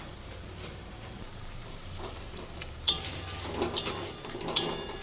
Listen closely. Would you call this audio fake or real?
fake